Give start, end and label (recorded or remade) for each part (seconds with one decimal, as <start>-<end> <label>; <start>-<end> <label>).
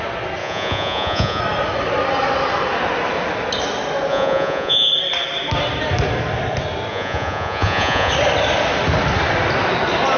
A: 0.0-0.4 recorded; 0.4-1.4 remade; 1.4-4.1 recorded; 4.1-4.9 remade; 4.9-6.9 recorded; 6.9-8.1 remade; 8.1-10.2 recorded